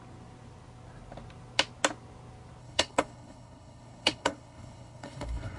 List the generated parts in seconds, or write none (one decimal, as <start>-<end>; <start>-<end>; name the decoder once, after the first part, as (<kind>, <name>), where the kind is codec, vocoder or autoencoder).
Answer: 2.6-5.6 (codec, HILCodec)